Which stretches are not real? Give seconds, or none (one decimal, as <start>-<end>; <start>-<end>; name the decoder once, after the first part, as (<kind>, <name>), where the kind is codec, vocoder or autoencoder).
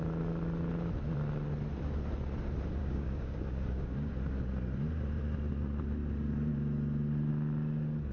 2.8-4.1 (codec, DAC)